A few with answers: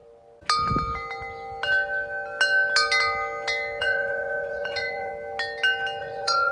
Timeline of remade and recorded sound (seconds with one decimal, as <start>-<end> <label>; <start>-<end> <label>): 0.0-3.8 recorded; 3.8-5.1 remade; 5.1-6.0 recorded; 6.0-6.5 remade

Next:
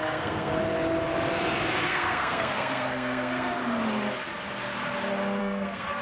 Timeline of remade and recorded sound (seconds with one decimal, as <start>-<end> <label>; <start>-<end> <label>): 0.0-0.6 remade; 0.6-1.9 recorded; 1.9-3.5 remade; 3.5-5.4 recorded; 5.4-6.0 remade

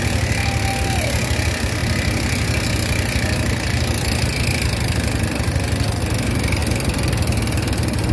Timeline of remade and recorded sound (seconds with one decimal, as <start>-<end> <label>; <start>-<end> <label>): 0.0-6.6 recorded; 6.6-8.1 remade

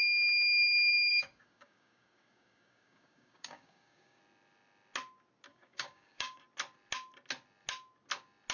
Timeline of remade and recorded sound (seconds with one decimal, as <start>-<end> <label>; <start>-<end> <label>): 0.0-1.1 recorded; 1.1-4.2 remade; 4.2-5.5 recorded; 5.5-6.4 remade; 6.4-8.5 recorded